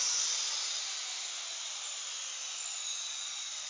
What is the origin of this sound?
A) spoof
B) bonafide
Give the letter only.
B